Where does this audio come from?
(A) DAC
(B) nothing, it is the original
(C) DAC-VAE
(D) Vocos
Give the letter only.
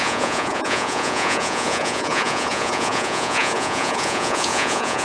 D